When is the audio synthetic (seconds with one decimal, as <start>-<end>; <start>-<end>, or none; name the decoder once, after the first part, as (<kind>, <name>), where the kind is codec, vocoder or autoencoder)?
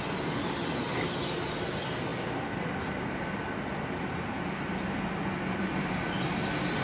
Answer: none